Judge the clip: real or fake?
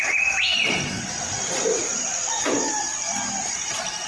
real